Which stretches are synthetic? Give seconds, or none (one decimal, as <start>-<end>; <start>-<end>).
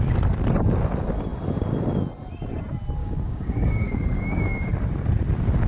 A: 3.0-4.7